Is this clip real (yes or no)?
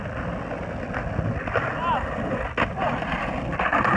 no